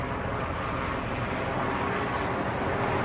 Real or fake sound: real